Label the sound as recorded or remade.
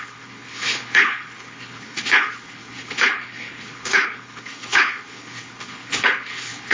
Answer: remade